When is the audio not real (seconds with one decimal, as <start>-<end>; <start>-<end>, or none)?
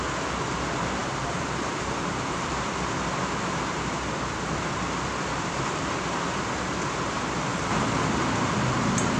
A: 1.0-2.5; 7.5-8.1